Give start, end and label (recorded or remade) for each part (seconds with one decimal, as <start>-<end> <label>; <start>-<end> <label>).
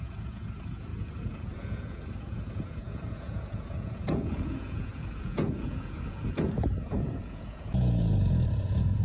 0.0-9.0 remade